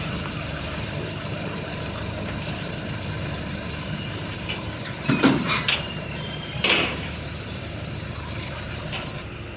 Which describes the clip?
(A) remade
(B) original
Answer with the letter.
A